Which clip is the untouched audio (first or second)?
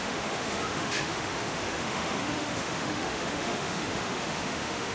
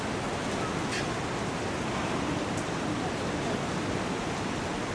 second